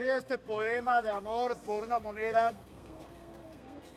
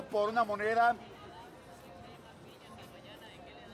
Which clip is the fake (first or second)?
first